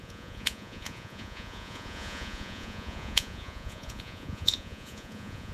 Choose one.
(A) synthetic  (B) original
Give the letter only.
A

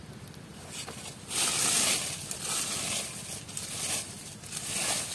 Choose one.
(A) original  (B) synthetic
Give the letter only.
A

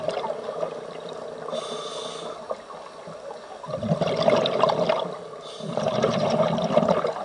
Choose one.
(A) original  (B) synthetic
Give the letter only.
A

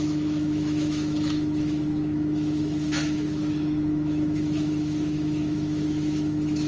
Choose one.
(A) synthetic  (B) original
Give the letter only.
A